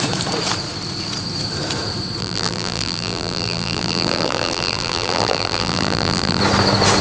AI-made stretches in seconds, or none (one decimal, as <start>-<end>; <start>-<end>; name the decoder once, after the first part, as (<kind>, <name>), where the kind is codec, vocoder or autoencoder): 2.2-6.4 (vocoder, BigVGAN v2)